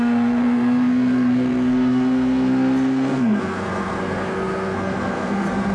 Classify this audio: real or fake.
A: fake